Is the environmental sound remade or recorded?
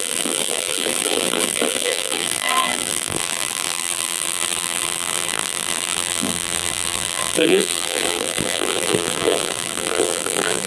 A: remade